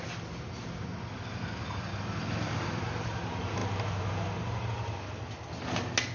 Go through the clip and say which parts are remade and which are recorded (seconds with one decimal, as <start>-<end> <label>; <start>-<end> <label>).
0.0-6.1 recorded